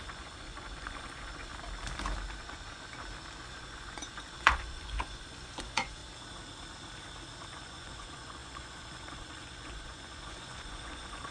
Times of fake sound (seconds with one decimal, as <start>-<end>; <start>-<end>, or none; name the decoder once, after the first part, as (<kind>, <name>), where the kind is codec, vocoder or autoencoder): 0.0-1.5 (vocoder, Vocos); 2.4-2.9; 3.4-6.0; 7.5-11.3